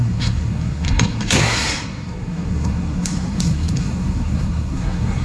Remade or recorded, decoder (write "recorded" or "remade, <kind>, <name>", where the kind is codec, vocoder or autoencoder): remade, codec, SNAC